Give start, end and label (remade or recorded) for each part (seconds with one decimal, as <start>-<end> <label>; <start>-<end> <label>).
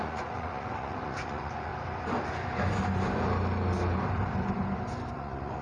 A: 0.0-1.7 remade; 1.7-5.1 recorded; 5.1-5.6 remade